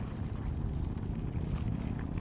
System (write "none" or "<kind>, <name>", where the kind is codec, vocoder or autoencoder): none